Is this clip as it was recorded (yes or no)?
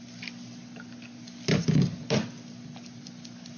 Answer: yes